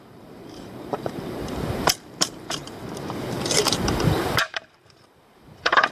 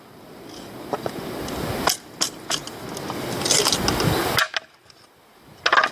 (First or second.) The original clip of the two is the second